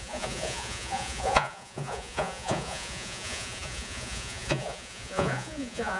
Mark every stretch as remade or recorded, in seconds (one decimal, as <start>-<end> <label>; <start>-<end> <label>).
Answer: 0.0-6.0 remade